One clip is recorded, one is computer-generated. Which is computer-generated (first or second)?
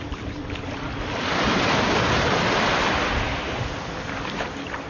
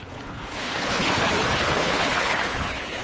second